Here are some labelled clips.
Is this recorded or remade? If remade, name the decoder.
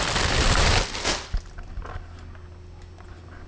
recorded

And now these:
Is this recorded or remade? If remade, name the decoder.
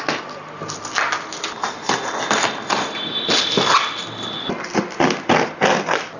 recorded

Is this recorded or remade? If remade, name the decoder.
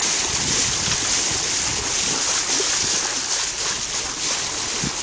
recorded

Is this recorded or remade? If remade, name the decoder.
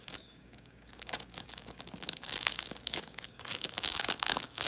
remade, codec, DAC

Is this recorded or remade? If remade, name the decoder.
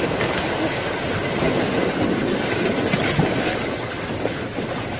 recorded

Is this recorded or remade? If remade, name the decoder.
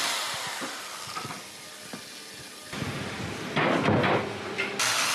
recorded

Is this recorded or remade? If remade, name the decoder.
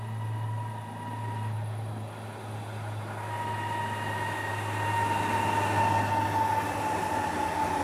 recorded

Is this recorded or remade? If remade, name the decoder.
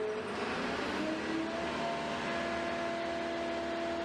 recorded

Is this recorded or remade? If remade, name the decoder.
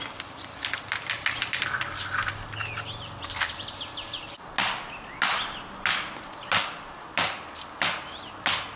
recorded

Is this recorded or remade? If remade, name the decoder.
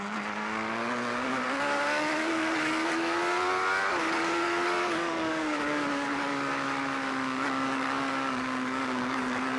remade, codec, DAC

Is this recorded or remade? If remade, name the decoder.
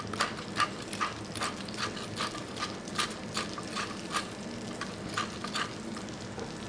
recorded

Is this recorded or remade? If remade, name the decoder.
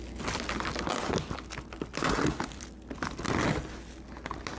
recorded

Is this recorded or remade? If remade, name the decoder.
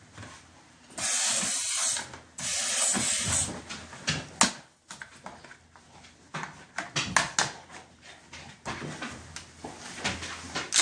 recorded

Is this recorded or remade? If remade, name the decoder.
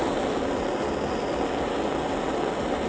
recorded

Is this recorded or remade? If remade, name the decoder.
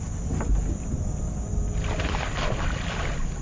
recorded